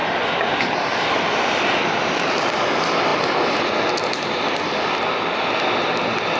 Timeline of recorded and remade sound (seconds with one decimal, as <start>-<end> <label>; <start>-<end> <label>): 0.0-2.4 remade; 2.4-6.4 recorded